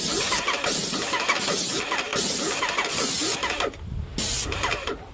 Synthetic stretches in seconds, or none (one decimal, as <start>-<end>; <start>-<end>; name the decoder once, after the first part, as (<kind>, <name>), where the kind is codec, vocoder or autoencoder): none